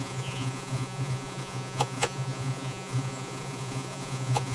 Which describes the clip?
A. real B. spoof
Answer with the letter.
B